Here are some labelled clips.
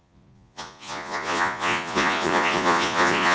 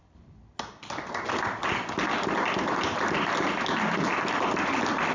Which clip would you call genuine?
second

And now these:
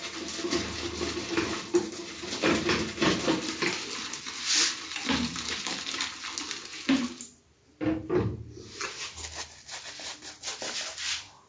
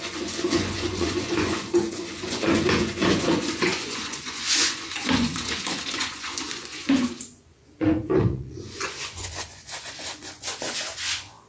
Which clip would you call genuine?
first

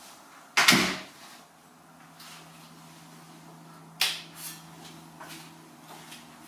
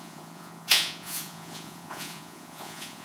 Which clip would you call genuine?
first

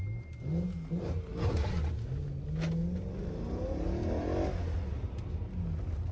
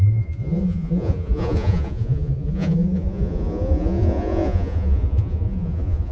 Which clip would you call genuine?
first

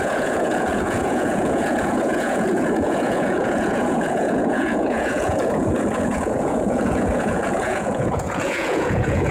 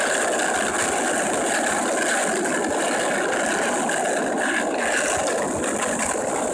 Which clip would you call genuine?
second